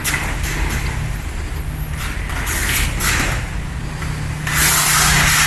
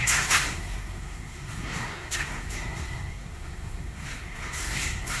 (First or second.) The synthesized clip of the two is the second